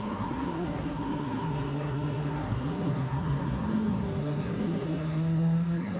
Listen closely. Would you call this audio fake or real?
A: fake